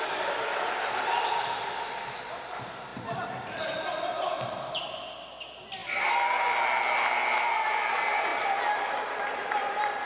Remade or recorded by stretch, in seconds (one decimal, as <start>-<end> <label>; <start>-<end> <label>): 0.0-10.1 recorded